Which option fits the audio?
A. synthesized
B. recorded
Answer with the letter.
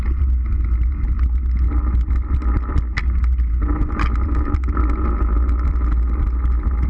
B